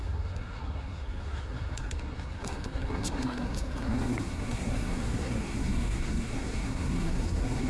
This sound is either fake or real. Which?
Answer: fake